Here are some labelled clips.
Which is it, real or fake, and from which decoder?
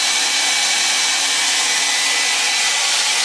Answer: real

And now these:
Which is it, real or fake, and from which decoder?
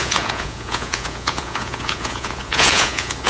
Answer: fake, vocoder, Vocos